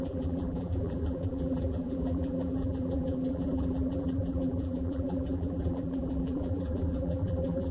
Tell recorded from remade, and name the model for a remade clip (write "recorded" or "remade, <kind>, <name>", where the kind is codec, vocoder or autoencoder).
remade, vocoder, BigVGAN v2